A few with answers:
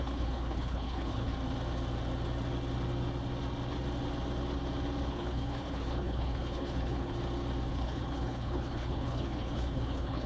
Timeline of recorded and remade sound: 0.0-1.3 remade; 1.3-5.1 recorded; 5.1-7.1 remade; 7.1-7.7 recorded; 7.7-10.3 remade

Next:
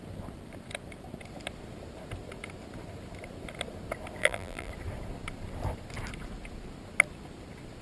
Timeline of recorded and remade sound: 0.0-4.2 recorded; 4.2-4.7 remade; 4.7-7.8 recorded